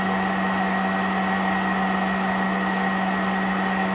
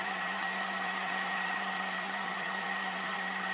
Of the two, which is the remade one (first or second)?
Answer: second